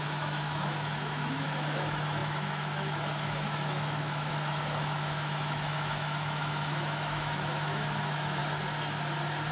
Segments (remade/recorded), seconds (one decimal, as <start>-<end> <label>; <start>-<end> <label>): 0.0-8.4 remade; 8.4-9.5 recorded